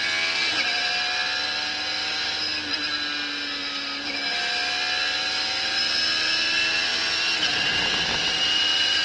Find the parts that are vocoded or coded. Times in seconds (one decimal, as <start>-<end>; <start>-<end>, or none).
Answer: none